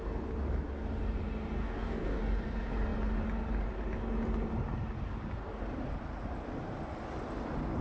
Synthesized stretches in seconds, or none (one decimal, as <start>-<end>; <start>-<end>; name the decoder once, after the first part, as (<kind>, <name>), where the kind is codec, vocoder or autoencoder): 1.6-2.2 (codec, DAC)